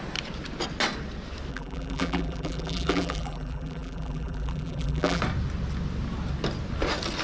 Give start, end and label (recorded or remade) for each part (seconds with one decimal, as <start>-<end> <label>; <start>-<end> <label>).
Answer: 0.0-1.5 recorded; 1.5-5.2 remade; 5.2-7.2 recorded